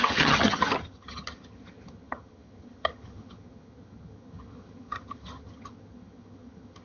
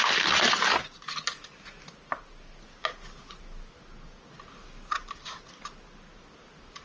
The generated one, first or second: first